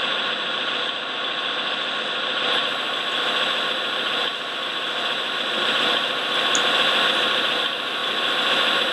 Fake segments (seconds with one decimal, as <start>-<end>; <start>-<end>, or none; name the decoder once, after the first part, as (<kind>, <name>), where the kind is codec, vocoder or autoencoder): none